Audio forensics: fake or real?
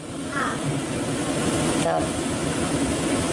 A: real